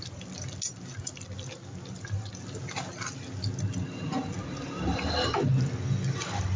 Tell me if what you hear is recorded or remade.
recorded